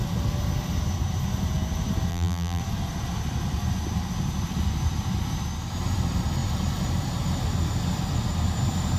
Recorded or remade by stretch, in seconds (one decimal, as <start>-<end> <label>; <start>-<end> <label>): 0.0-2.1 recorded; 2.1-2.6 remade; 2.6-9.0 recorded